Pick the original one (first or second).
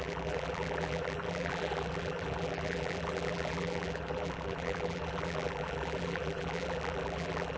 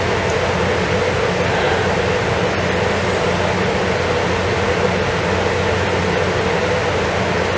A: second